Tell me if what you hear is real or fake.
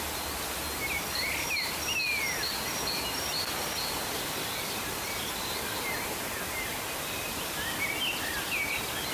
real